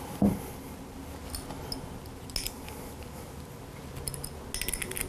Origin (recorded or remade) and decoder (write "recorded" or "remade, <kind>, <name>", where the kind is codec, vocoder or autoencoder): recorded